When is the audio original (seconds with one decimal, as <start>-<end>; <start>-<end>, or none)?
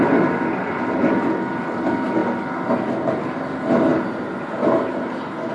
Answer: 0.0-5.5